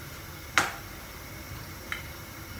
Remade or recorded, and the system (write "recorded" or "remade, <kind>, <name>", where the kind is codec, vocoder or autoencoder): recorded